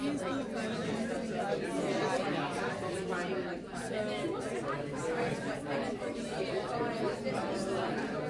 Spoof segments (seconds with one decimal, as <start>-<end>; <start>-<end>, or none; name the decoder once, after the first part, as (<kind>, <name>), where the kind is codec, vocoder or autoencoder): 6.1-6.9 (vocoder, BigVGAN v2)